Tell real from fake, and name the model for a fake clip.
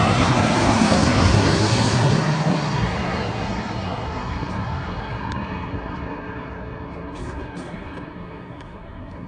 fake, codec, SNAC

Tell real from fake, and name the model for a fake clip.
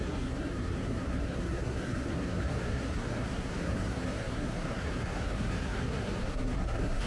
fake, codec, SNAC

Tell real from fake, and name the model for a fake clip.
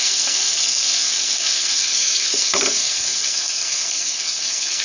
fake, codec, SNAC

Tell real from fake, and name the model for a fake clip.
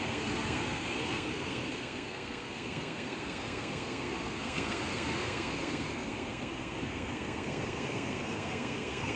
fake, codec, SNAC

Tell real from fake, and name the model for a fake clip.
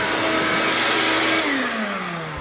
real